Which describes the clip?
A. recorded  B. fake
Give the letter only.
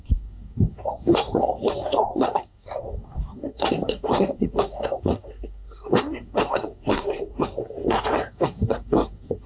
B